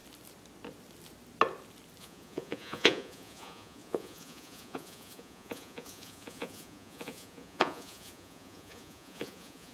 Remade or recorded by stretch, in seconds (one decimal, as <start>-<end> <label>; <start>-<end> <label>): 0.0-2.0 recorded; 2.0-9.7 remade